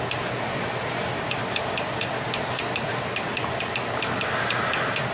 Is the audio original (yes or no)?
yes